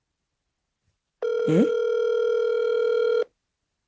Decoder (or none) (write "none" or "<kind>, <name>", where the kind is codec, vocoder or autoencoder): none